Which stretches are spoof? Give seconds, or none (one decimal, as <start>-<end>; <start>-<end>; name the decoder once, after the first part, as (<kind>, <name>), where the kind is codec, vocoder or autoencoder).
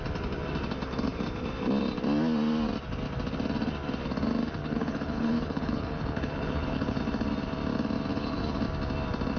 4.6-7.0 (codec, HILCodec); 8.1-8.6